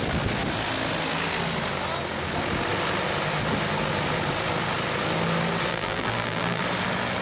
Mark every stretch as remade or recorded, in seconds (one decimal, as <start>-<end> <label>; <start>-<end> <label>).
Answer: 0.0-5.7 recorded; 5.7-6.6 remade; 6.6-7.2 recorded